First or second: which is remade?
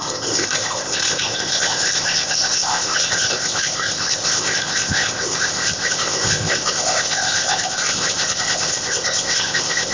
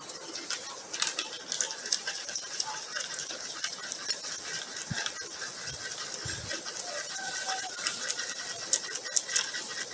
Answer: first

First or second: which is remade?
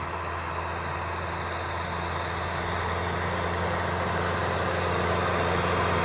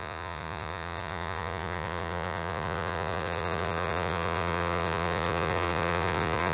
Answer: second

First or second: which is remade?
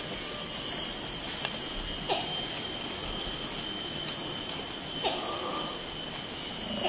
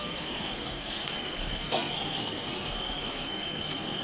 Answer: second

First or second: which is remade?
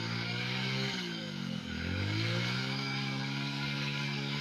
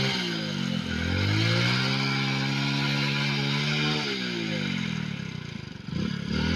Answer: first